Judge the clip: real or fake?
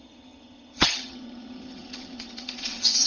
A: fake